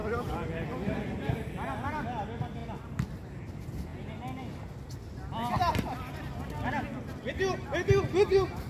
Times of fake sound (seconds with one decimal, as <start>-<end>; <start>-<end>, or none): none